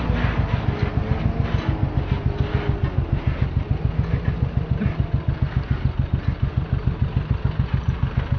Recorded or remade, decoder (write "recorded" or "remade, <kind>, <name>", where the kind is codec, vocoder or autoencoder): recorded